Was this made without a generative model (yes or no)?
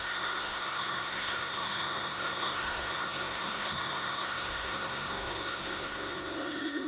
no